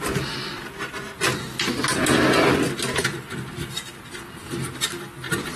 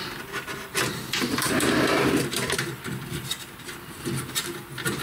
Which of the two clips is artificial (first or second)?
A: second